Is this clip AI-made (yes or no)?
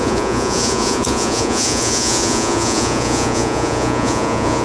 yes